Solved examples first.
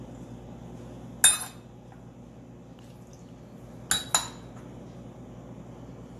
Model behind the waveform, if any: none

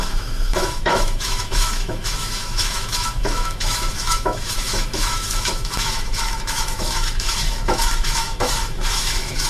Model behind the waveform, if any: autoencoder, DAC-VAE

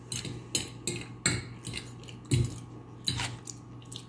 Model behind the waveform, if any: none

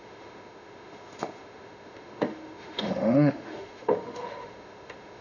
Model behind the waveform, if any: autoencoder, DAC-VAE